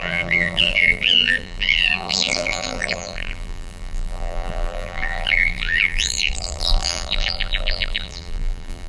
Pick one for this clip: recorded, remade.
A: remade